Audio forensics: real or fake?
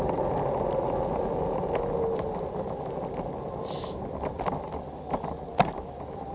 real